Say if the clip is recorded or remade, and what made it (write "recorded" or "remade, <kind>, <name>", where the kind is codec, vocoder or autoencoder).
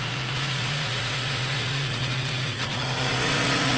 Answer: remade, vocoder, Vocos